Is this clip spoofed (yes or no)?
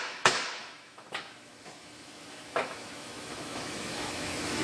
yes